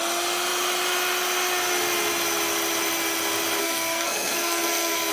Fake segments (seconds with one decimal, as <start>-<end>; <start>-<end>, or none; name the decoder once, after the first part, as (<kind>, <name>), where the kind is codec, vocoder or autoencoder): 3.6-5.1 (codec, SNAC)